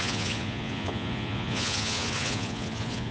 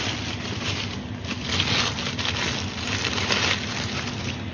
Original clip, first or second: second